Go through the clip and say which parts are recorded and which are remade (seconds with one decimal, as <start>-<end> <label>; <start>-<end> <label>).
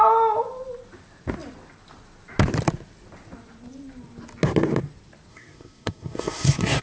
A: 0.0-5.3 recorded; 5.3-6.8 remade